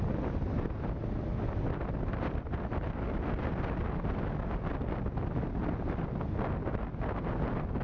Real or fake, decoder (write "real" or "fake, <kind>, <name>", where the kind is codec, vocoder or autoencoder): real